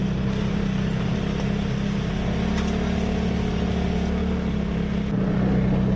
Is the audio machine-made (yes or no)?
no